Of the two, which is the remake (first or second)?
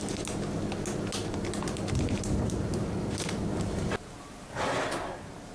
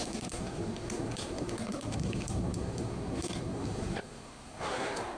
second